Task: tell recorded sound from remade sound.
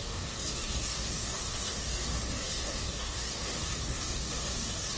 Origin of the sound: remade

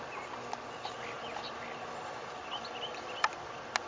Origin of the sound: recorded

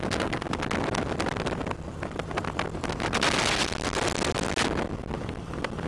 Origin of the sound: recorded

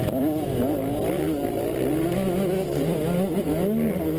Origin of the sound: recorded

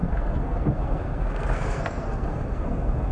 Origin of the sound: remade